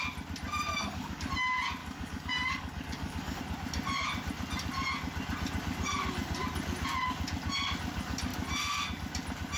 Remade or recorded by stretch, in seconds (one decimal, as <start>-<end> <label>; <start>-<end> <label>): 0.0-0.7 recorded; 0.7-1.3 remade; 1.3-1.8 recorded; 1.8-3.4 remade; 3.4-9.6 recorded